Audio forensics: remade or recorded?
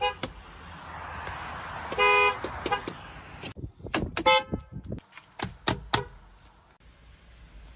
recorded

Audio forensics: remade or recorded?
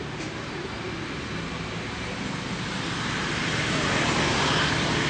recorded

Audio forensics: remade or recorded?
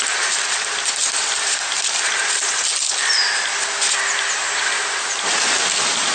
recorded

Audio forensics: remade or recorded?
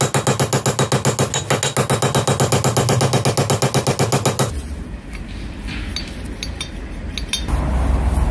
recorded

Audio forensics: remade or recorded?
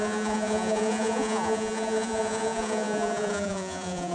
remade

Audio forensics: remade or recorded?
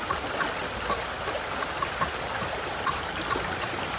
recorded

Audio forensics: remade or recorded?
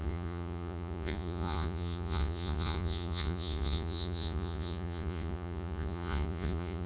remade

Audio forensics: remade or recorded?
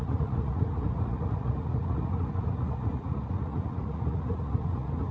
remade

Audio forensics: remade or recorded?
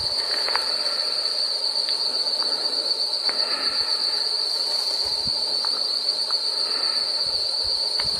recorded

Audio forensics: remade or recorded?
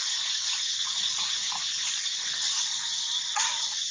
remade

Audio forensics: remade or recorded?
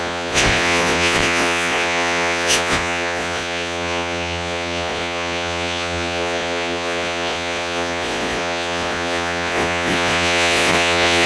remade